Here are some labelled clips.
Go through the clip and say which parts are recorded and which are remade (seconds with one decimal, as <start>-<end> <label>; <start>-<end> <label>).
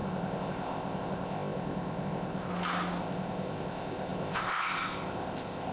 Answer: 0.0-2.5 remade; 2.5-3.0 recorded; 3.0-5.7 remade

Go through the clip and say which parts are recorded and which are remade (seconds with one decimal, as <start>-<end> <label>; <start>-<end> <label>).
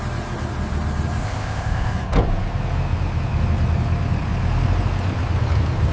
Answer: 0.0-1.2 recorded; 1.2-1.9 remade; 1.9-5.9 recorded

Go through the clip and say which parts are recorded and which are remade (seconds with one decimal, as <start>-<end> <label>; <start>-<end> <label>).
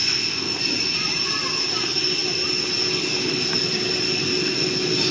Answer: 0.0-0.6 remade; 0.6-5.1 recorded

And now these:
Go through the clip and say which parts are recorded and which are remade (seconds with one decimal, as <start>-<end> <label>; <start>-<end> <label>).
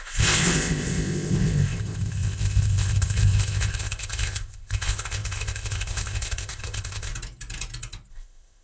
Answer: 0.0-7.1 remade; 7.1-8.1 recorded; 8.1-8.6 remade